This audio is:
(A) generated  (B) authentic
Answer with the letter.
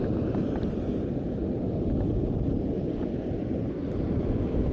B